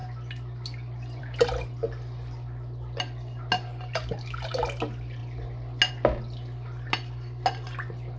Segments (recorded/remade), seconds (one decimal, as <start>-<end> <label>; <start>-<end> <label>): 0.0-8.2 recorded